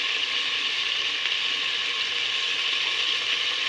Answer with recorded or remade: recorded